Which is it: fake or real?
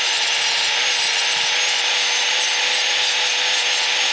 real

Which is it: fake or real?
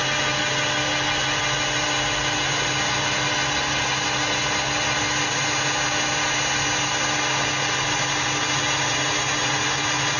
real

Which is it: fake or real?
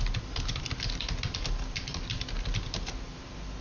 real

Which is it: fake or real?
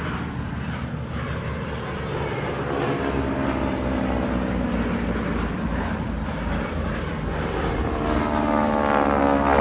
real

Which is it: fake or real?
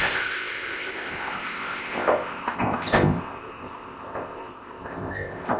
fake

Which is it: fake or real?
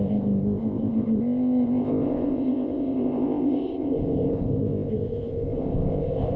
fake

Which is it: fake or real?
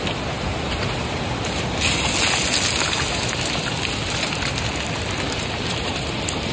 real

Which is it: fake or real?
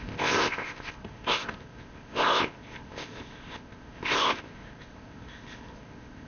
fake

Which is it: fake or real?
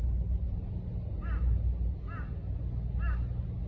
real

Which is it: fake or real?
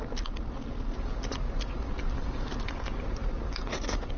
real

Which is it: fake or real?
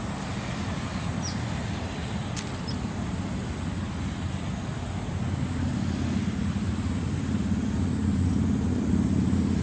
real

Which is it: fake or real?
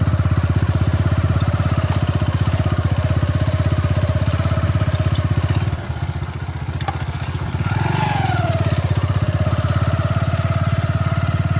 real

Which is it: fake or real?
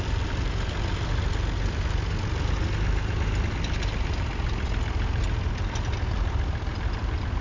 real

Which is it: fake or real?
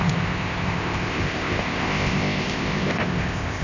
fake